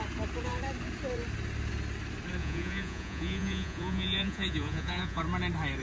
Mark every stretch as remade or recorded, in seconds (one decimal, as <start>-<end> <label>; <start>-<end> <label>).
0.0-2.4 recorded; 2.4-5.2 remade; 5.2-5.8 recorded